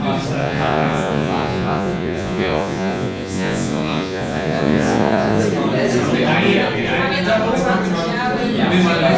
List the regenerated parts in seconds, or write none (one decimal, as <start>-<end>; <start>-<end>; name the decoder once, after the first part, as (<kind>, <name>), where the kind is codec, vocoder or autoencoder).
0.4-5.4 (vocoder, Vocos)